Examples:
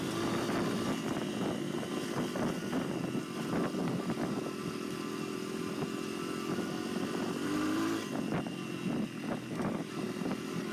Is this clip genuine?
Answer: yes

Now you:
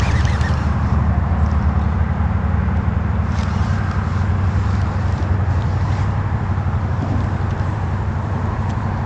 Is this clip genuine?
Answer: no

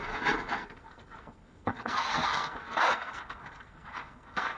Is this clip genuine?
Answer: no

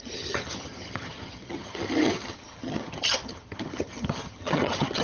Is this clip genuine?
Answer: no